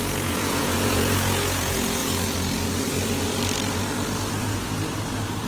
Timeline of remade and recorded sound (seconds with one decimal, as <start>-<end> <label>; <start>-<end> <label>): 0.0-2.0 remade; 2.0-5.5 recorded